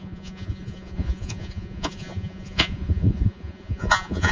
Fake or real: fake